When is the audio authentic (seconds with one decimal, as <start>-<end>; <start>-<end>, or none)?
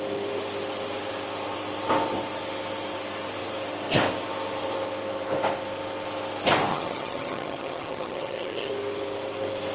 0.0-6.7; 8.7-9.7